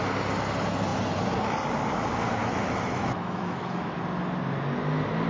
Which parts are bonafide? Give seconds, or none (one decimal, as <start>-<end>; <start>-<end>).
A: 0.0-2.4; 4.0-5.3